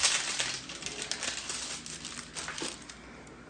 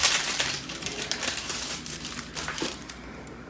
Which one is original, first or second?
first